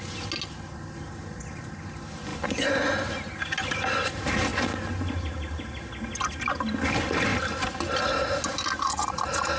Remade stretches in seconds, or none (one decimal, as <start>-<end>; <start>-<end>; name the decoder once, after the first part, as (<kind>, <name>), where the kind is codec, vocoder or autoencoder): none